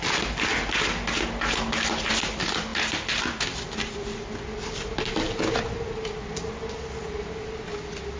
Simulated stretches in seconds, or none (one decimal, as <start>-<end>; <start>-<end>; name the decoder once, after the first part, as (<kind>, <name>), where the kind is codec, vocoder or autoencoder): none